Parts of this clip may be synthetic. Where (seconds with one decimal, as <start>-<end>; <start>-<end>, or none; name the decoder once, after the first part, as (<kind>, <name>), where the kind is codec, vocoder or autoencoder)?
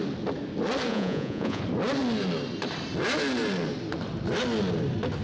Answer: 0.9-1.6 (vocoder, Vocos)